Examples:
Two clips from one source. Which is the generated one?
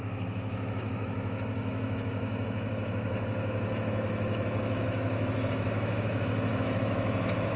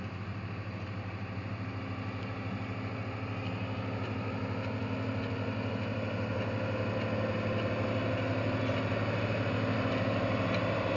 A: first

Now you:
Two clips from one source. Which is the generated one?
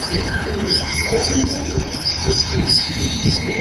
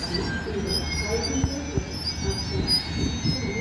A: first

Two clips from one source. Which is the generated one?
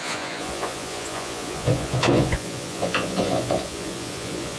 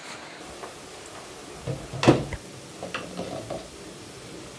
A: first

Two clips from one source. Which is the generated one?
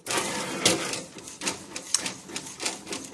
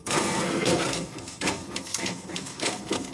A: second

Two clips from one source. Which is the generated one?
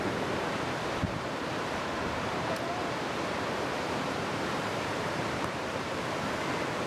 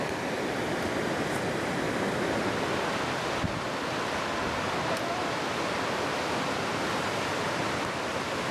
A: first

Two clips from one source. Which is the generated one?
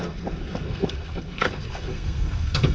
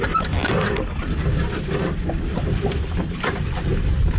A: first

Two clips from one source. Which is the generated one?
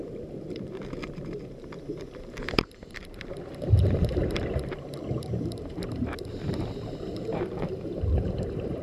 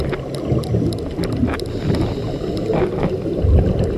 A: first